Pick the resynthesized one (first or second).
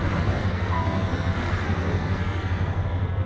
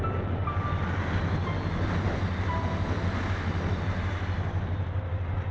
first